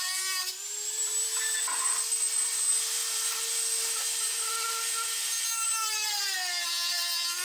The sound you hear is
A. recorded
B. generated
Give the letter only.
B